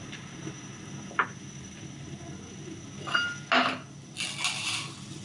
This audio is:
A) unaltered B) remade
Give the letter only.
A